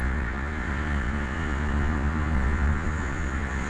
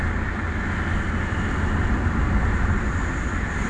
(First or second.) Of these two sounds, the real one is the second